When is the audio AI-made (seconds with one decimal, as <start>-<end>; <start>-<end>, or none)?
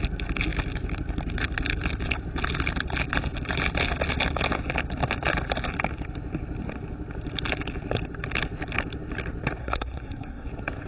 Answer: 9.6-10.5